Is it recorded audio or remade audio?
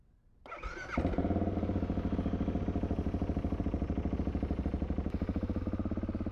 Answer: recorded